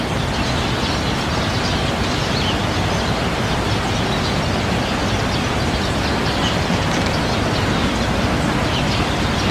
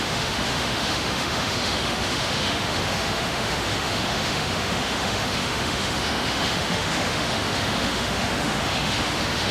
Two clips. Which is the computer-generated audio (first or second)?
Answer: second